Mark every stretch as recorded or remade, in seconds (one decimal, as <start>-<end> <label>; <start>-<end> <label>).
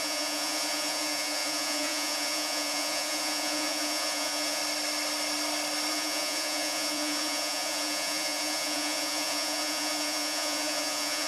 0.0-4.6 remade; 4.6-5.9 recorded; 5.9-11.3 remade